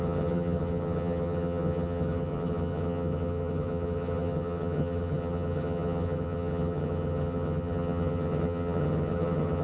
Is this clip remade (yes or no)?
yes